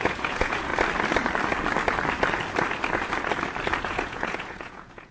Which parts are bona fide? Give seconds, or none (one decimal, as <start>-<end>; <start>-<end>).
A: 0.7-3.8